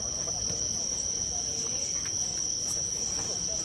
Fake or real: real